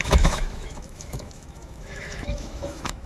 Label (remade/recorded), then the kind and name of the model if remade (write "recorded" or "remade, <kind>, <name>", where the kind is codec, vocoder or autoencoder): remade, autoencoder, DAC-VAE